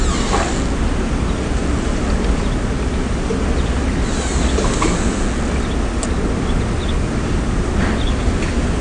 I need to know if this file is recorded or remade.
recorded